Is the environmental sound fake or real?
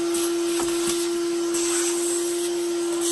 real